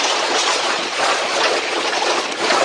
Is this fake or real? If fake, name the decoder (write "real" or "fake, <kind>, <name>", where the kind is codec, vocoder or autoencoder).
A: fake, vocoder, Vocos